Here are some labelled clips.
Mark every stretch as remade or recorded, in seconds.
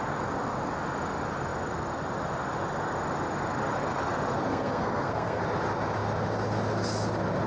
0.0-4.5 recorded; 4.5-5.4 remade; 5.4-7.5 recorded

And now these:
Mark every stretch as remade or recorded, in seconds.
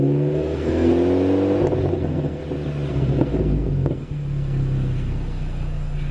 0.0-0.9 remade; 0.9-1.9 recorded; 1.9-2.4 remade; 2.4-2.9 recorded; 2.9-6.1 remade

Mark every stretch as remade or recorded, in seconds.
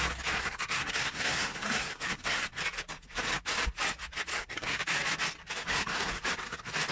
0.0-0.4 recorded; 0.4-2.6 remade; 2.6-4.3 recorded; 4.3-4.8 remade; 4.8-5.7 recorded; 5.7-6.2 remade; 6.2-6.9 recorded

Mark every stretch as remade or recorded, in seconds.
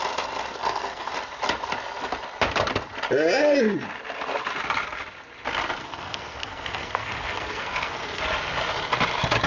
0.0-0.5 recorded; 0.5-1.1 remade; 1.1-5.8 recorded; 5.8-8.2 remade; 8.2-9.5 recorded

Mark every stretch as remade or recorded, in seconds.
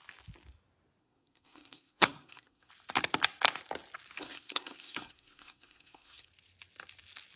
0.0-1.0 recorded; 1.0-2.7 remade; 2.7-4.2 recorded; 4.2-6.3 remade; 6.3-7.4 recorded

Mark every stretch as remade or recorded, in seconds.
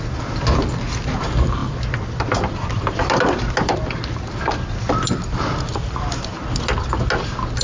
0.0-7.6 recorded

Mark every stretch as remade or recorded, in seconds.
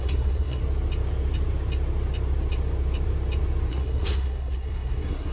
0.0-0.6 remade; 0.6-3.7 recorded; 3.7-5.3 remade